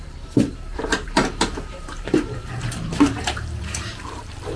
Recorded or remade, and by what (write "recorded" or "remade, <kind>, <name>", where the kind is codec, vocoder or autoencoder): remade, vocoder, BigVGAN v2